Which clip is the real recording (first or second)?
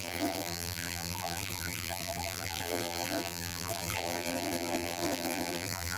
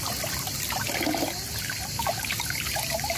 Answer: second